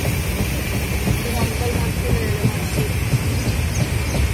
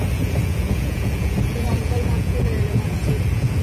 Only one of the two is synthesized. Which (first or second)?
second